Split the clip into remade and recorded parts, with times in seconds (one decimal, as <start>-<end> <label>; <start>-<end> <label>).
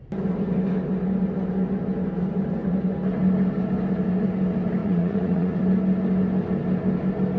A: 0.0-4.8 recorded; 4.8-5.6 remade; 5.6-7.4 recorded